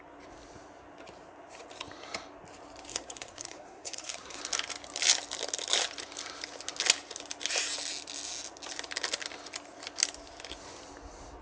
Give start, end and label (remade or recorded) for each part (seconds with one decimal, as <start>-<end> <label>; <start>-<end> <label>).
0.0-2.9 recorded; 2.9-4.4 remade; 4.4-11.4 recorded